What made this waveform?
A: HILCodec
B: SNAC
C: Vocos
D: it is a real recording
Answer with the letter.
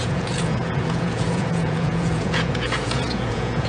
C